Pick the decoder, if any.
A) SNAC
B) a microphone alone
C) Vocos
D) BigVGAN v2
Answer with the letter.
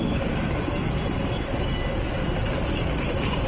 B